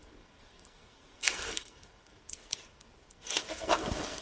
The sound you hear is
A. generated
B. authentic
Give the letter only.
A